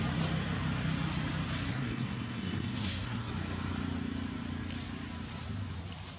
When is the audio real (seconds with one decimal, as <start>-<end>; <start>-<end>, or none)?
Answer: 0.0-1.7; 3.3-6.2